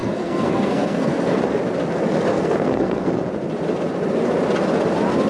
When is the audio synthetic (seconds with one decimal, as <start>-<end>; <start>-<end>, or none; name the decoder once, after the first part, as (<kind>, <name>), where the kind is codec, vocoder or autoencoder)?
0.0-1.4 (codec, SNAC); 2.3-3.1

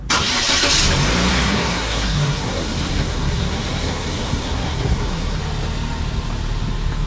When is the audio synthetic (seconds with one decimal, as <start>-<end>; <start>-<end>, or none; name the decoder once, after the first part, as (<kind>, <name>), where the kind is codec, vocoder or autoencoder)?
1.3-5.4 (codec, SNAC)

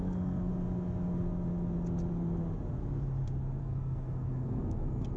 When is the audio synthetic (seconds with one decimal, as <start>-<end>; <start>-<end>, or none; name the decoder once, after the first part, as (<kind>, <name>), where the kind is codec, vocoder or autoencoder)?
0.0-0.5 (codec, SNAC); 3.6-5.2

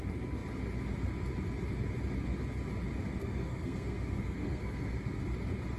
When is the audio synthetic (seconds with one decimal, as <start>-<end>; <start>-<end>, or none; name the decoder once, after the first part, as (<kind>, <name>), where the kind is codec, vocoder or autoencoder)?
3.2-5.2 (codec, SNAC)

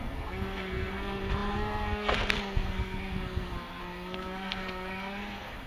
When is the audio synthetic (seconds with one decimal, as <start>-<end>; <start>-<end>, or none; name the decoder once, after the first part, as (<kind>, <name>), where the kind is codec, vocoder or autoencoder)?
0.0-5.7 (codec, SNAC)

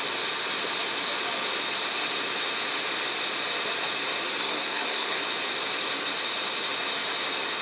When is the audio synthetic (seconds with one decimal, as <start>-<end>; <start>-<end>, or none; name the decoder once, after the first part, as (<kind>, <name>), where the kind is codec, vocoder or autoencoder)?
4.4-5.2 (codec, SNAC)